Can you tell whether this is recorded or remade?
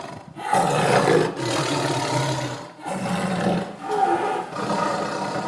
recorded